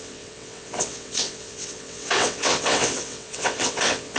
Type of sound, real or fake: fake